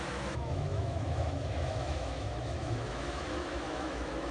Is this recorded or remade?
remade